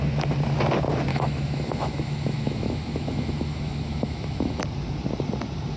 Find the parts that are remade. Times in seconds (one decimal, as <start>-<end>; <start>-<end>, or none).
1.1-4.6

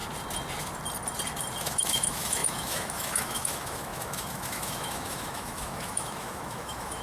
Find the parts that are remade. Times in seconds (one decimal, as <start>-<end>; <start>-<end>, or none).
1.6-7.0

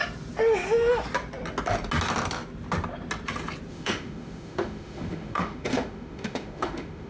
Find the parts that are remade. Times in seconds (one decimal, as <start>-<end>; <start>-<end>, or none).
3.7-7.1

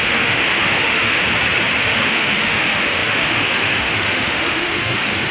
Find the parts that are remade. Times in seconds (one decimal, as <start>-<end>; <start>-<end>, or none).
0.0-1.2; 1.8-5.3

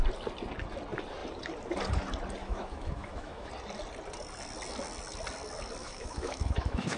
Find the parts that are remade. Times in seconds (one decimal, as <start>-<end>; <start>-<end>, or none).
2.4-3.5; 5.8-7.0

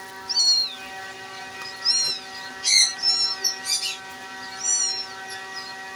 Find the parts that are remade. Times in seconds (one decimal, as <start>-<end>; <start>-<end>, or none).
none